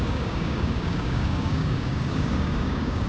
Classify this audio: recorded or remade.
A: remade